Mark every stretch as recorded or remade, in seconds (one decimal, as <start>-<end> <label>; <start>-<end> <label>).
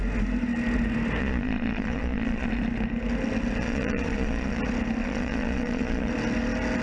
0.0-1.2 recorded; 1.2-2.5 remade; 2.5-3.6 recorded; 3.6-4.6 remade; 4.6-5.0 recorded; 5.0-6.1 remade; 6.1-6.8 recorded